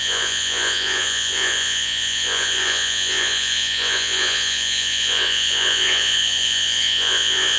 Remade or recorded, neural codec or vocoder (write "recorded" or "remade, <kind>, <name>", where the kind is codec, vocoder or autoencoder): remade, vocoder, Vocos